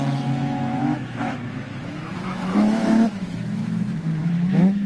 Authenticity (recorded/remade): remade